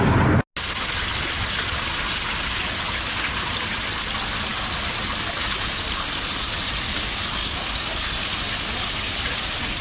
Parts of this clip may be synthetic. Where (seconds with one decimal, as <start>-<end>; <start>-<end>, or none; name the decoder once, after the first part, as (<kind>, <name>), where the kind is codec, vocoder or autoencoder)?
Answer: 7.4-7.9 (codec, DAC)